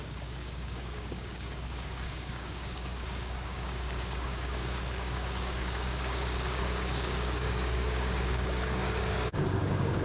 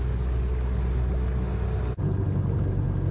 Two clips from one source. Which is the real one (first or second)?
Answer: second